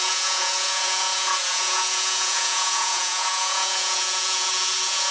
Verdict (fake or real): fake